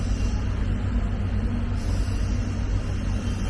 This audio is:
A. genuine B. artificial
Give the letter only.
A